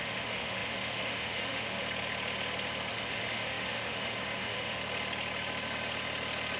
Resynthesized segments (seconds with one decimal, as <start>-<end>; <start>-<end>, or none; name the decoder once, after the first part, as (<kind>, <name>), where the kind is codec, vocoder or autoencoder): 0.0-1.8 (autoencoder, DAC-VAE); 2.9-4.8